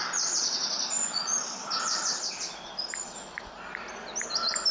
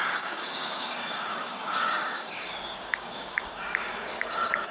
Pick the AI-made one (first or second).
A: second